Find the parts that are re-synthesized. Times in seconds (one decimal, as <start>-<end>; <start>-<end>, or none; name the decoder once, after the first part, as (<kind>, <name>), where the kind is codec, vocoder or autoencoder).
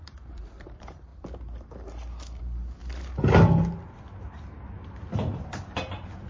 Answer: 0.0-1.1 (vocoder, BigVGAN v2); 2.4-2.8; 4.8-6.3